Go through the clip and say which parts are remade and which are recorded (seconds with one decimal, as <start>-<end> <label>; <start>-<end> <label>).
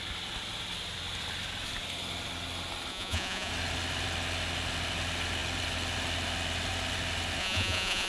0.0-2.9 recorded; 2.9-3.5 remade; 3.5-7.4 recorded; 7.4-8.1 remade